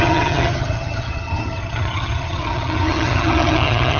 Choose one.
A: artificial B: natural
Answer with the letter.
A